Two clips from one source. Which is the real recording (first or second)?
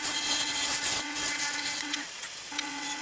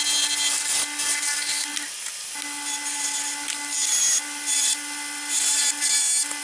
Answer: second